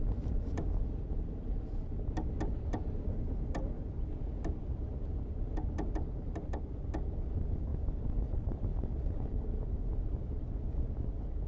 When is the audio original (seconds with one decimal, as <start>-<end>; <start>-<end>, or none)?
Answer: 0.0-11.5